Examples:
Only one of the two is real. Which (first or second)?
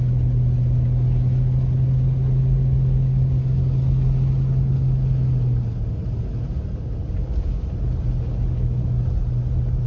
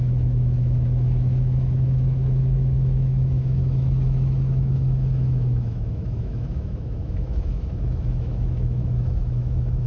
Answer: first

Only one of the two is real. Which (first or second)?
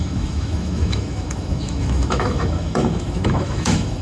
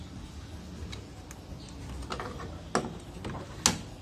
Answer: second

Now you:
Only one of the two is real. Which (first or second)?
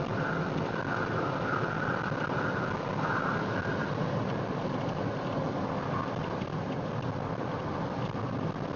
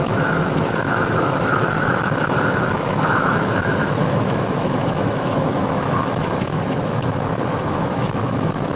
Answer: first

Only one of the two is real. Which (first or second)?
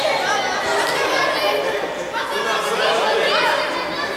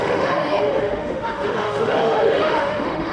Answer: first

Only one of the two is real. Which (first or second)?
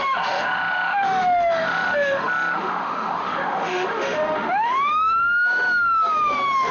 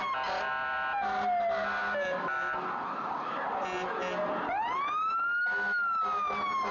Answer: second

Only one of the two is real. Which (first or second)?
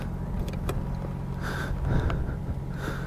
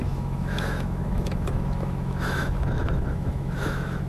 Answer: first